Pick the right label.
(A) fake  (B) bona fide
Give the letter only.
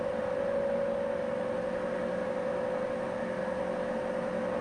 B